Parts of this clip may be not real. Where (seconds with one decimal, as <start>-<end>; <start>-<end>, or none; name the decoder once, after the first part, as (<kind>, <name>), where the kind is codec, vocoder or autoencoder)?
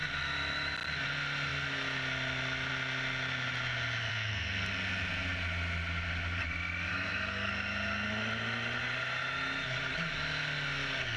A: 4.1-4.7 (codec, SNAC); 6.9-7.5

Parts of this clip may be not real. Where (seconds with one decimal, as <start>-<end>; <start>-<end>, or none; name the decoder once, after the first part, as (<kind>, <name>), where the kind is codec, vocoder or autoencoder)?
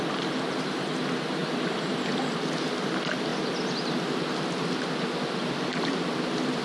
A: 1.4-2.6 (vocoder, BigVGAN v2)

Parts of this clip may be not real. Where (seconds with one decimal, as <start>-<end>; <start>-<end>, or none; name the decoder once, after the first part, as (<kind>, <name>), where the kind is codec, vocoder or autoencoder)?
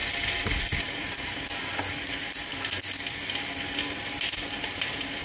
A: 0.9-1.3 (vocoder, BigVGAN v2); 4.0-5.2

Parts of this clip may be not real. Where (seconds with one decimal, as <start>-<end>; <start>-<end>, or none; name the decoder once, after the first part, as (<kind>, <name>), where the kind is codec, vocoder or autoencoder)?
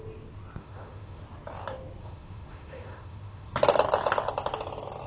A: 0.6-1.2 (autoencoder, DAC-VAE); 2.0-3.5